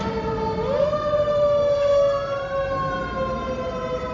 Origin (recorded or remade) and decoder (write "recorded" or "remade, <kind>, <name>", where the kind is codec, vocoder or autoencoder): recorded